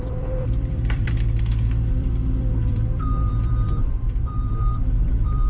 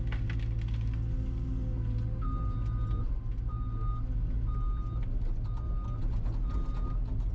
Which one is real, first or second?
second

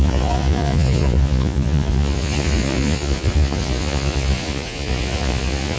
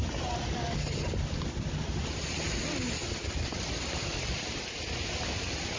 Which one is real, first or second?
second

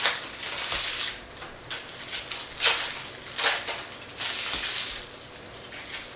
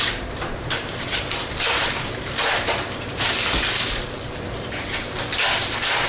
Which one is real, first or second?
first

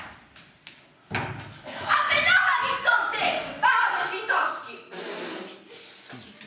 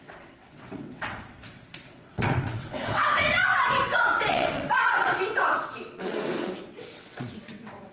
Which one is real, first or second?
first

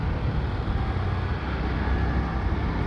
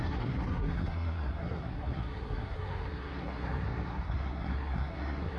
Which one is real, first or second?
first